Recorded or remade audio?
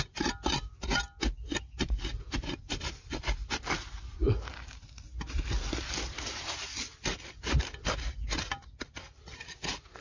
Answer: recorded